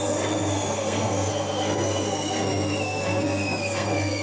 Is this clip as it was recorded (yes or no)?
no